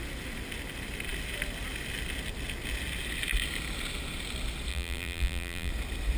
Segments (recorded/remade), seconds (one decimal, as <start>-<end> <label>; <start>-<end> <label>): 0.0-4.7 recorded; 4.7-5.7 remade; 5.7-6.2 recorded